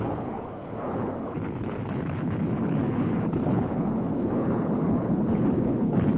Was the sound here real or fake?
fake